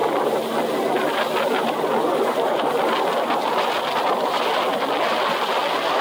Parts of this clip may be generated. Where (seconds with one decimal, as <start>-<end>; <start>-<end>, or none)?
none

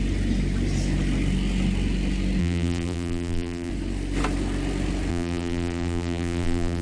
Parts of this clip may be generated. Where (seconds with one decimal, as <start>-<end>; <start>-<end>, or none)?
2.4-3.7; 5.1-6.8

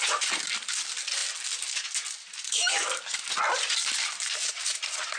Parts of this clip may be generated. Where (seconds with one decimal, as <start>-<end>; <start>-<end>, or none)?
none

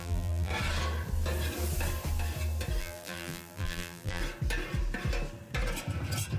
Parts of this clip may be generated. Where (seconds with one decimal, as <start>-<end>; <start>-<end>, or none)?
0.0-0.5; 2.8-4.2

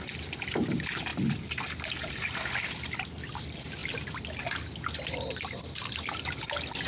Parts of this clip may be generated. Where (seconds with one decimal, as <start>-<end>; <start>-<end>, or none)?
0.0-1.1; 2.1-6.9